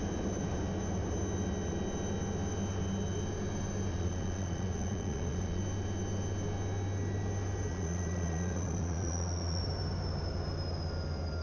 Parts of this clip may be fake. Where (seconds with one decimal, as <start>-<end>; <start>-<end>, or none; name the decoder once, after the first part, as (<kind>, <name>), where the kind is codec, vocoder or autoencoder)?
3.9-5.6 (vocoder, Vocos); 7.7-9.6